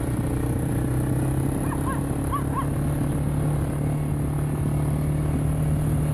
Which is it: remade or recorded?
recorded